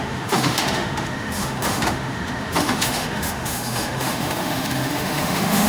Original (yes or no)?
no